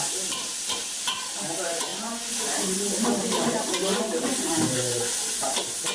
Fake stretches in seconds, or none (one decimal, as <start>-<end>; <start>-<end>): none